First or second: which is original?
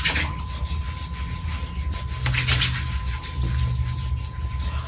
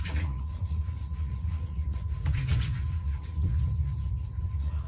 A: first